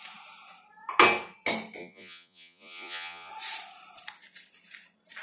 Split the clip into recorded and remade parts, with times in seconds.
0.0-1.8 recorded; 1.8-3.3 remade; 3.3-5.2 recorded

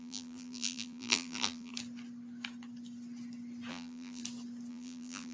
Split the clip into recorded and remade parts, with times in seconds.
0.0-1.7 remade; 1.7-3.7 recorded; 3.7-4.2 remade; 4.2-4.7 recorded; 4.7-5.3 remade